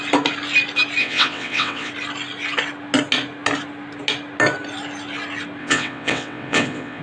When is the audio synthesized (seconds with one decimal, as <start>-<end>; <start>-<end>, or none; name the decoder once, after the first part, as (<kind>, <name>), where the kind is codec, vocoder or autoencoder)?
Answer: 1.0-1.9 (vocoder, WaveNeXt); 5.6-7.0